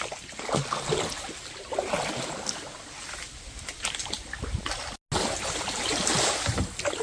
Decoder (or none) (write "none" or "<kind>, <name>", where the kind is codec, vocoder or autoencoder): none